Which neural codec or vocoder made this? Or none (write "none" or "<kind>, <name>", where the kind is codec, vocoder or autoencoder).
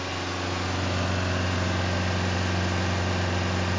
none